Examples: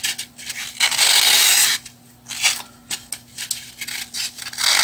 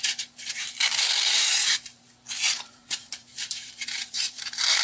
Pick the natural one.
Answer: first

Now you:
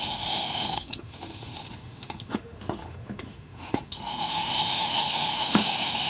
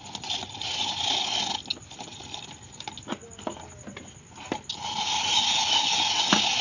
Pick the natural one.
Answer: second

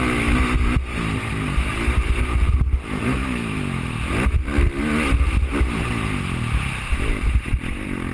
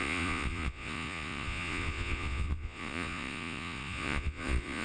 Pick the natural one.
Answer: first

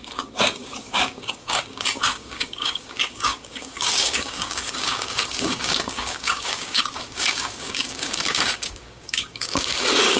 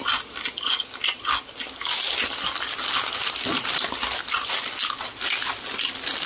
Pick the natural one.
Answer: second